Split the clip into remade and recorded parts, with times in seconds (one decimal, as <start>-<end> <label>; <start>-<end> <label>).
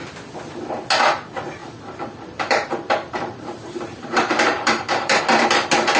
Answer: 0.0-1.6 recorded; 1.6-5.2 remade; 5.2-6.0 recorded